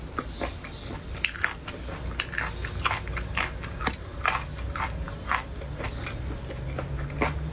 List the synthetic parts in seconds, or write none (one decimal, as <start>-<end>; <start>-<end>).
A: none

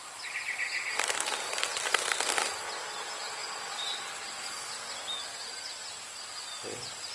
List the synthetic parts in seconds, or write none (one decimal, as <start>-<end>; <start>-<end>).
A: none